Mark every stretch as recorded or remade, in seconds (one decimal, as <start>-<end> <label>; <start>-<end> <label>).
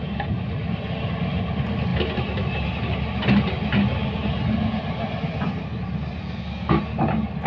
0.0-6.2 recorded; 6.2-6.8 remade; 6.8-7.5 recorded